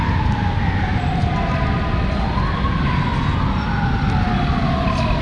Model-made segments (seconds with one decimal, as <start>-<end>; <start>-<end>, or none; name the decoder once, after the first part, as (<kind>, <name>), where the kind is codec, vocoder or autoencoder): none